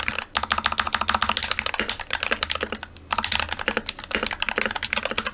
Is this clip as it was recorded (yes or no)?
yes